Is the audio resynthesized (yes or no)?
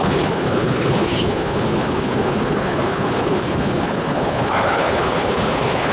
yes